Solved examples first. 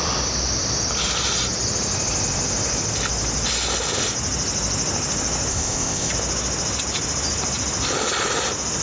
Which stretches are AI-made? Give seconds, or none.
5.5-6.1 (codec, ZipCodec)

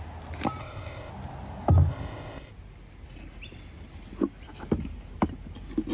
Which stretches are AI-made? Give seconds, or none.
0.6-1.1 (codec, ZipCodec); 1.9-2.5

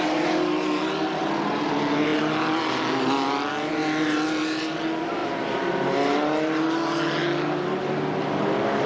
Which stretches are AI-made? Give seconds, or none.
none

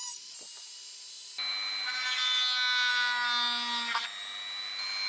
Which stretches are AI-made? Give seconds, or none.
none

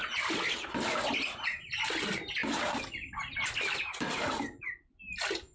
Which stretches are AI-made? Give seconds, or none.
none